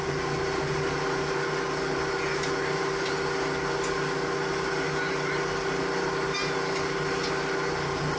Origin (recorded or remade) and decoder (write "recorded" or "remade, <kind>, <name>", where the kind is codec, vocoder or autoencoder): recorded